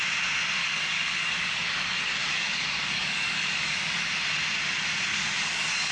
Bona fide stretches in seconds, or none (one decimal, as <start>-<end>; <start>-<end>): 0.0-0.6; 4.1-5.1